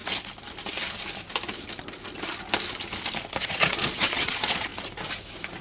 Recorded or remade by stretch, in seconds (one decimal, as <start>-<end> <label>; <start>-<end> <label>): 0.0-3.4 recorded; 3.4-4.7 remade; 4.7-5.6 recorded